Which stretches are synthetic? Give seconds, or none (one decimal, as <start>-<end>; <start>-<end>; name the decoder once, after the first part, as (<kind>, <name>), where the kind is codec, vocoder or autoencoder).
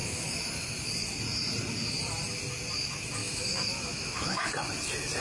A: 0.0-0.9 (autoencoder, DAC-VAE); 3.2-4.5